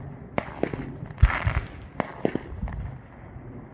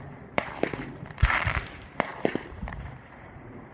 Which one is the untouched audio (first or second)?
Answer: first